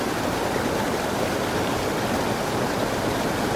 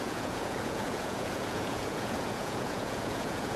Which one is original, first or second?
first